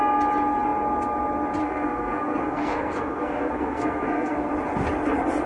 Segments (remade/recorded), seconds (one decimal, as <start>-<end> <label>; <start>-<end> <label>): 0.0-1.6 recorded; 1.6-4.5 remade; 4.5-5.5 recorded